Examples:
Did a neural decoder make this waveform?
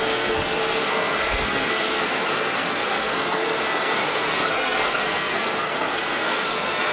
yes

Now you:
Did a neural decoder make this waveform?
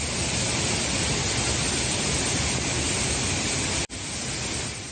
no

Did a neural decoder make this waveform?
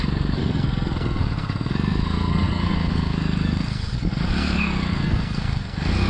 yes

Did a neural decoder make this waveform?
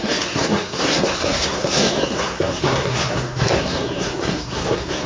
yes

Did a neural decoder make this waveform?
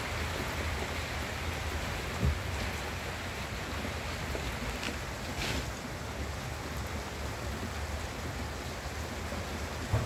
no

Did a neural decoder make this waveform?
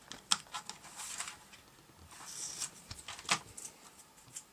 no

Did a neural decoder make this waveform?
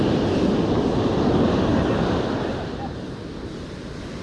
no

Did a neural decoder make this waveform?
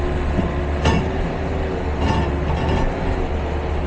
no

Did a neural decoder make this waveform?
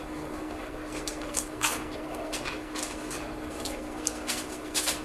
yes